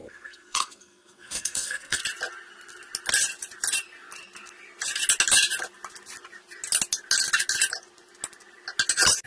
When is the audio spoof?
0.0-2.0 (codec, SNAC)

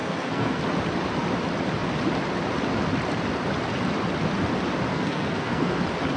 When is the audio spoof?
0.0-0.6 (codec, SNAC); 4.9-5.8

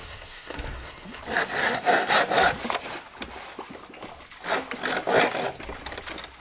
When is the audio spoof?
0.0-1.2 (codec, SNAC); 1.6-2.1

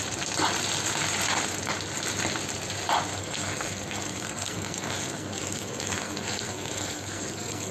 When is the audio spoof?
3.1-7.7 (codec, SNAC)

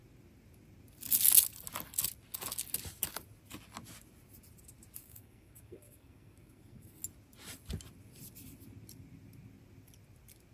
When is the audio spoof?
5.0-7.0 (codec, SNAC)